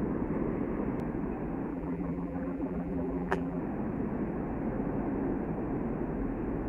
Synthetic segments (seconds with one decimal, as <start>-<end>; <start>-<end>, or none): 1.7-3.6